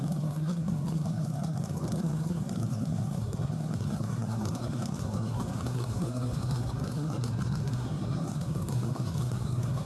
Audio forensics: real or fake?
fake